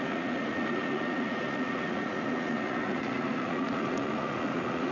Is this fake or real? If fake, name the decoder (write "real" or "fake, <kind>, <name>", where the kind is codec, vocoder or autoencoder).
fake, vocoder, Vocos